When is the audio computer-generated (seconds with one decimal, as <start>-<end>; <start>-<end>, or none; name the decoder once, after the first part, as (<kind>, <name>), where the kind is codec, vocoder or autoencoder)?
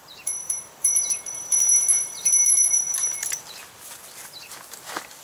0.0-2.5 (vocoder, BigVGAN v2)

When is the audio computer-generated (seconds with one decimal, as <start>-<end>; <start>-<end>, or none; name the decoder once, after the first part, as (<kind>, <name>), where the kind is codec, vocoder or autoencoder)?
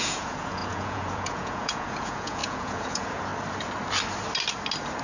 0.0-3.3 (vocoder, Vocos)